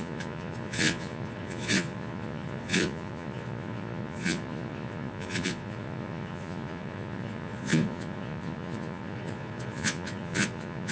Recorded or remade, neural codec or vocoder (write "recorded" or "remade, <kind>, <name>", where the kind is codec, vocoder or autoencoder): remade, vocoder, Vocos